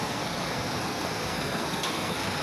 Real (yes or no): no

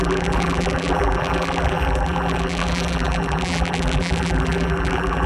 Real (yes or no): no